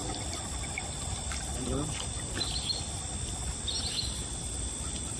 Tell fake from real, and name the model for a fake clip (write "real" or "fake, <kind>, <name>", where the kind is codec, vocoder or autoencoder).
real